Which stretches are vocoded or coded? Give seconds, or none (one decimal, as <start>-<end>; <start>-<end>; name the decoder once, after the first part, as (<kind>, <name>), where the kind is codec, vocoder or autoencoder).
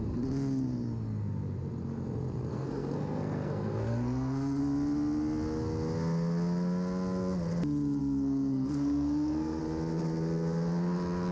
2.5-4.6 (codec, SNAC); 8.0-9.6